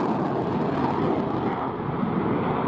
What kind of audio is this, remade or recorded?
recorded